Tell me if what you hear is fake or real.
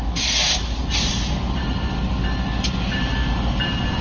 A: real